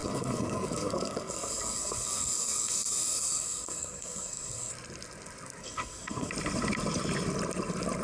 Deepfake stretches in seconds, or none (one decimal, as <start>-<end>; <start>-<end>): 0.0-4.7; 5.6-6.3